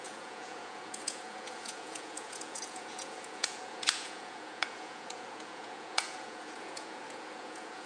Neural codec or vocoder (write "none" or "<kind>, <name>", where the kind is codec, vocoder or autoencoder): vocoder, Vocos